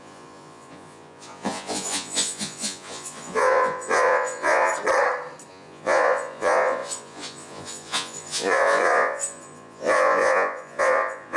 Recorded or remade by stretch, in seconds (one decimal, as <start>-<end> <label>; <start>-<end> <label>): 0.0-4.7 remade; 4.7-5.5 recorded; 5.5-11.4 remade